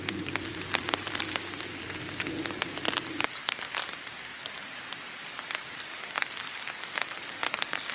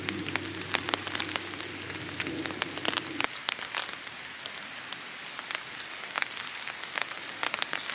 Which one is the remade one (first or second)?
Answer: first